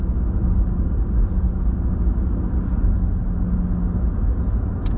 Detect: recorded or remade recorded